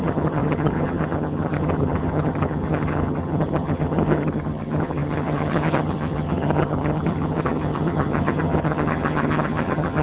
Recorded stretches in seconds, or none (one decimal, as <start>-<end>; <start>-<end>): none